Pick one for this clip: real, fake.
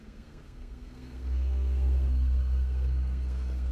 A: fake